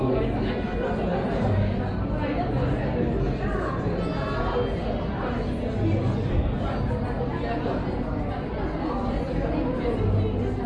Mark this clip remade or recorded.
recorded